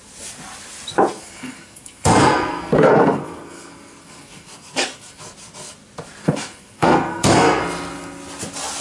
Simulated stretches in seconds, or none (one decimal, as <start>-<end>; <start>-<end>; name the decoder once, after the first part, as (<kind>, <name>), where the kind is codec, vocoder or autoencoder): 1.1-5.2 (codec, SNAC); 6.2-7.6